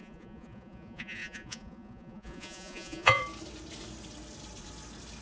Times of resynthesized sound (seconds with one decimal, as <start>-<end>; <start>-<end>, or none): 0.0-3.2